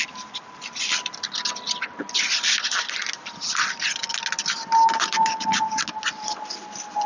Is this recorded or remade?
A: recorded